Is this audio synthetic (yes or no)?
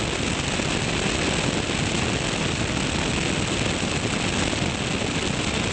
no